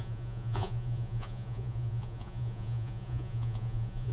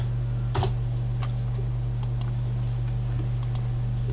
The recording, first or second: second